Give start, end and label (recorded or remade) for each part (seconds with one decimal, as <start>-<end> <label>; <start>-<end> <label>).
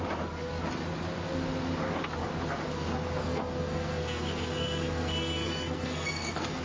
0.0-3.2 recorded; 3.2-6.6 remade